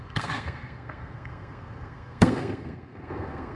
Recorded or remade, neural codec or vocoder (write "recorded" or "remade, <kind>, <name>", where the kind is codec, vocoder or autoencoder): remade, codec, SNAC